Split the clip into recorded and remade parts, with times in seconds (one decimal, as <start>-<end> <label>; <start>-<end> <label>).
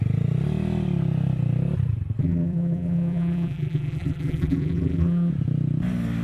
0.0-2.2 recorded; 2.2-5.3 remade; 5.3-6.2 recorded